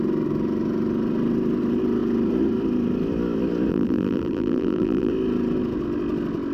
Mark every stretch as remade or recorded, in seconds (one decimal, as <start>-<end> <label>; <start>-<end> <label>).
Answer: 0.0-3.7 recorded; 3.7-5.1 remade; 5.1-6.5 recorded